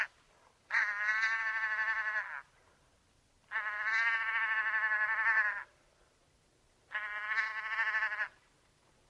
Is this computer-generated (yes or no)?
no